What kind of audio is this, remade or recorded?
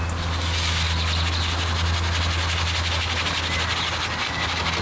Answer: recorded